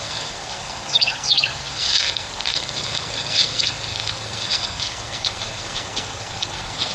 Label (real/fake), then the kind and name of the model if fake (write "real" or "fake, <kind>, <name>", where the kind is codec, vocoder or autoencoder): fake, codec, SNAC